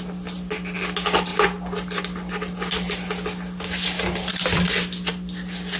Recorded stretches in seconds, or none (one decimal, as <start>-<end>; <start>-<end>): 0.0-5.8